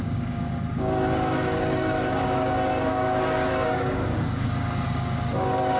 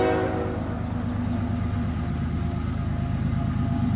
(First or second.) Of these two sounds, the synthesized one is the first